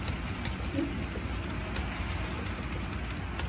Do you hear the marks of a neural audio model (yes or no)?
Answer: no